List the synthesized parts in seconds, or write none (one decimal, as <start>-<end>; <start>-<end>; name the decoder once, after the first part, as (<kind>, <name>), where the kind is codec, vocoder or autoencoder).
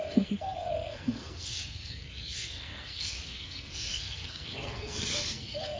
0.0-5.8 (codec, SNAC)